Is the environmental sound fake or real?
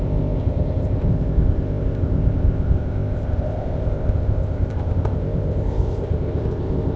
fake